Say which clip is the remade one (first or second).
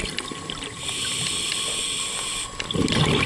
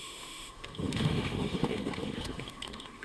second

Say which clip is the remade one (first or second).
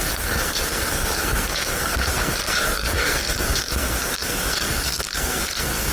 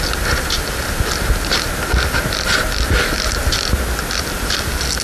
first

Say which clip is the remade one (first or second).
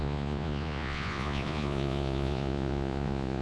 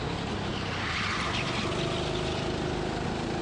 first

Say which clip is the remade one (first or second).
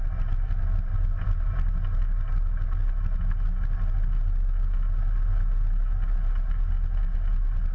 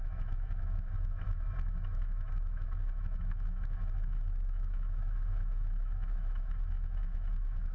second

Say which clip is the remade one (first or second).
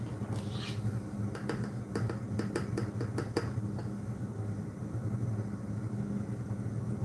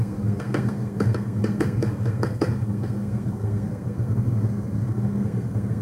second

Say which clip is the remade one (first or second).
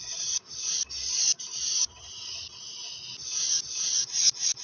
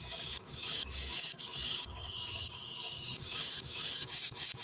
second